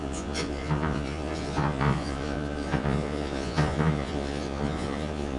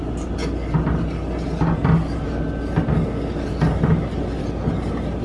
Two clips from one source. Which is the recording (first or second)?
second